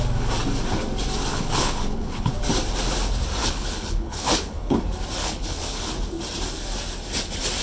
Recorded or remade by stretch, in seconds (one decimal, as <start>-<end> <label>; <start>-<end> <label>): 0.0-1.3 recorded; 1.3-2.3 remade; 2.3-3.4 recorded; 3.4-4.8 remade; 4.8-5.2 recorded; 5.2-5.9 remade; 5.9-7.6 recorded